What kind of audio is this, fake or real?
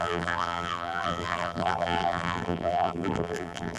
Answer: fake